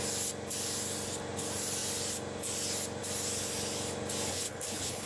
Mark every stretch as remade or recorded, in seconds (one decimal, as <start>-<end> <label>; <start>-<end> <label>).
0.0-4.3 recorded; 4.3-5.1 remade